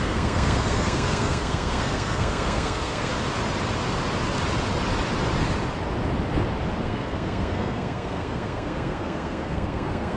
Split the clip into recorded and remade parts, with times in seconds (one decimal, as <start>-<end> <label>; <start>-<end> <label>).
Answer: 0.0-3.1 remade; 3.1-6.8 recorded; 6.8-10.2 remade